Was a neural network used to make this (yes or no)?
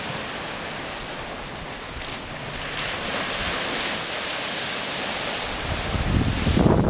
no